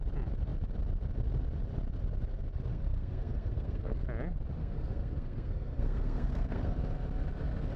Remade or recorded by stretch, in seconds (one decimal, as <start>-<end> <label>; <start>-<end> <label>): 0.0-2.7 recorded; 2.7-4.0 remade; 4.0-4.6 recorded; 4.6-6.7 remade; 6.7-7.8 recorded